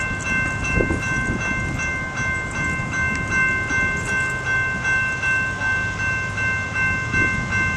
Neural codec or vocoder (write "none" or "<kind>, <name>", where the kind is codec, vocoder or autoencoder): none